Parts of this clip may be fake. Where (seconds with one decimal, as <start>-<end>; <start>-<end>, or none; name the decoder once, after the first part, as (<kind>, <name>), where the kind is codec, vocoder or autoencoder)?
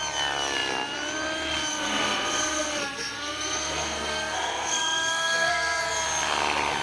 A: 1.7-5.8 (codec, SNAC)